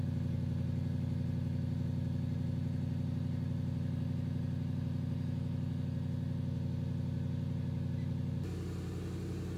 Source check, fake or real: real